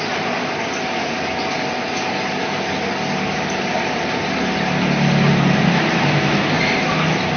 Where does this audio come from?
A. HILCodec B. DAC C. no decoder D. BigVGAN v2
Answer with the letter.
C